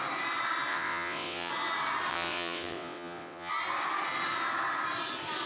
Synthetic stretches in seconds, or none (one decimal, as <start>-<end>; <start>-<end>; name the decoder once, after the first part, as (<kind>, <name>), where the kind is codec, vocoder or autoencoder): 0.7-1.5 (vocoder, WaveNeXt); 2.1-3.5

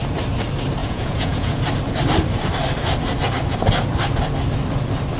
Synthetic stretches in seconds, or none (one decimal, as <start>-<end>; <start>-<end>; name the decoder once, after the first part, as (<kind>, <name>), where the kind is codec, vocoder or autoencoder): 0.8-1.6 (vocoder, Vocos)

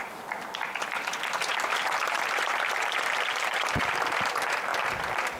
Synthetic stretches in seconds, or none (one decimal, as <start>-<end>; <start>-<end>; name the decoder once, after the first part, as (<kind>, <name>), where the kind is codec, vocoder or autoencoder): 1.5-3.9 (vocoder, BigVGAN v2)

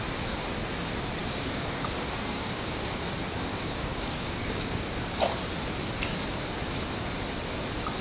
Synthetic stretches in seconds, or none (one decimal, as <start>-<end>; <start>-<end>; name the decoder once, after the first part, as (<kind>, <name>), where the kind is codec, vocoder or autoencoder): 1.2-3.0 (codec, DAC); 3.5-5.2